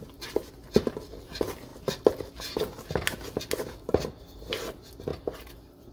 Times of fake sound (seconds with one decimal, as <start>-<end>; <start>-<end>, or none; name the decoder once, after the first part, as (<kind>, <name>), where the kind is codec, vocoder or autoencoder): 5.1-5.9 (vocoder, BigVGAN v2)